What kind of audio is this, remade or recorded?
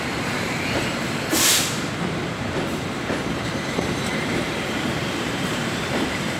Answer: remade